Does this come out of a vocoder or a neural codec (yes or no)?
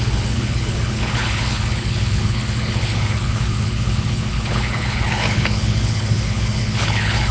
yes